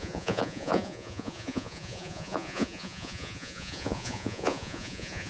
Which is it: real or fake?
fake